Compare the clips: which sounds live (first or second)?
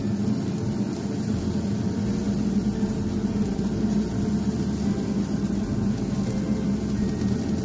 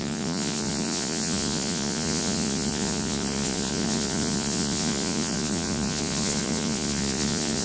first